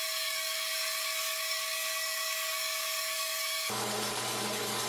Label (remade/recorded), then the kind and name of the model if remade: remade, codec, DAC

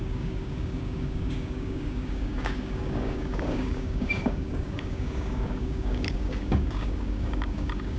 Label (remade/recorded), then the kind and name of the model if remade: remade, codec, DAC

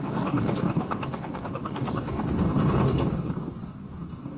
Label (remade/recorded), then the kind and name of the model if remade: remade, codec, DAC